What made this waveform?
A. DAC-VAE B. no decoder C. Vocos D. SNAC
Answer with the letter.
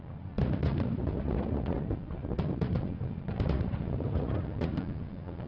C